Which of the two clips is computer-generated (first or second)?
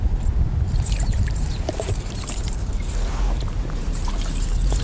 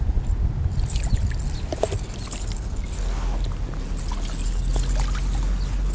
first